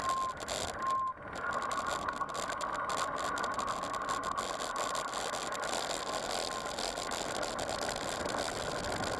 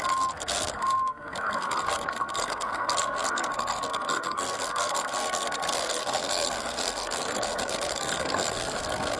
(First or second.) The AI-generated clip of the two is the second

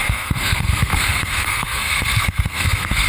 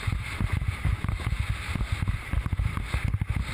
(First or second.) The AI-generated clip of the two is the first